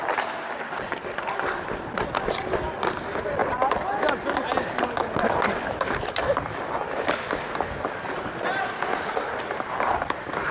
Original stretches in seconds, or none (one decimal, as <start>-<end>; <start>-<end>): 0.0-10.5

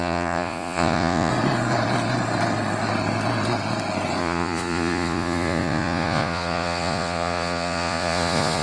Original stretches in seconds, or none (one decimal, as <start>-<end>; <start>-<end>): 1.3-4.2

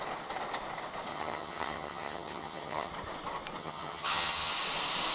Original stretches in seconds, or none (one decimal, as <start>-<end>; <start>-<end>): 0.0-1.1; 2.9-3.6; 4.5-5.1

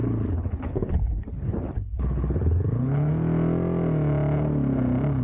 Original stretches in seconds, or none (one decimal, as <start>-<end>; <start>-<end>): 3.1-5.2

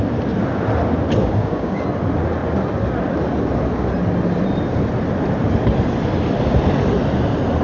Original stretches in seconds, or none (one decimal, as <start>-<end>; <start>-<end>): 0.0-1.2; 1.8-7.6

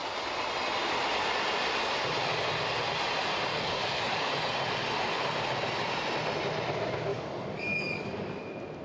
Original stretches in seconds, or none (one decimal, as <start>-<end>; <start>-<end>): 0.0-3.5; 4.3-7.1; 8.3-8.8

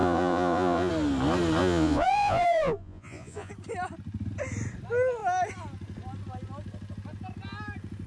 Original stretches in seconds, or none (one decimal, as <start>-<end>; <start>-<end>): 0.9-1.6; 3.5-8.1

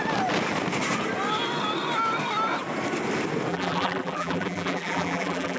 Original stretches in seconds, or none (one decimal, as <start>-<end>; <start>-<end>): 0.0-3.5